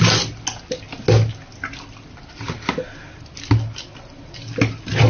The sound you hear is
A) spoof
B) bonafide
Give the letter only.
B